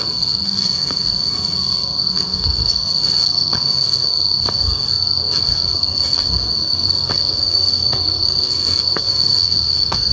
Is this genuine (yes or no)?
no